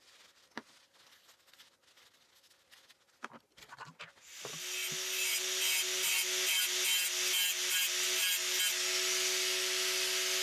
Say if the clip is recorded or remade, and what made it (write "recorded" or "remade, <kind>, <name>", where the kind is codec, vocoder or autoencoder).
recorded